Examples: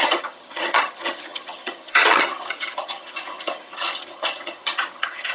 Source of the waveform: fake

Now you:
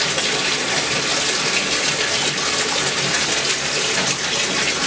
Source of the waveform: real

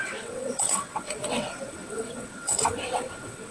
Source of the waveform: fake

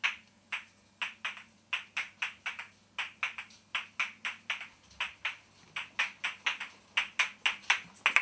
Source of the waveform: real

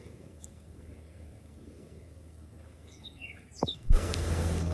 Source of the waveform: fake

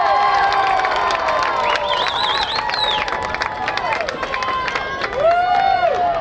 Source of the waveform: real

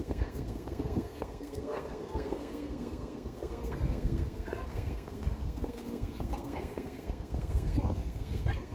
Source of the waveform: fake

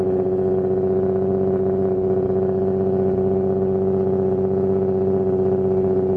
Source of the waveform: real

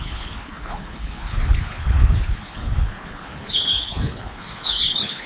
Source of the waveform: fake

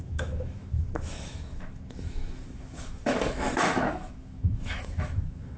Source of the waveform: fake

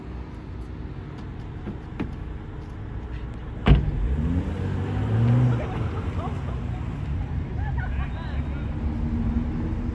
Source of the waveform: real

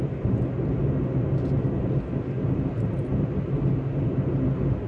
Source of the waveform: real